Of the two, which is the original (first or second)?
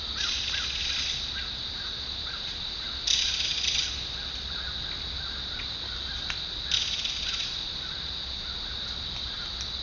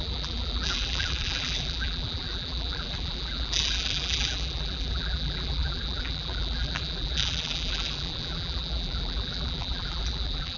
first